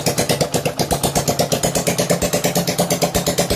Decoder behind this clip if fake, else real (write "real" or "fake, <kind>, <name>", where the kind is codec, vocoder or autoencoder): real